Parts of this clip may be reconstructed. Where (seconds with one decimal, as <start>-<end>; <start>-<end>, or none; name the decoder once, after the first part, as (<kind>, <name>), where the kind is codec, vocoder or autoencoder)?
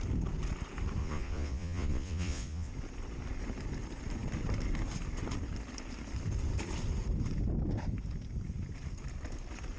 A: 1.0-2.7 (vocoder, Vocos)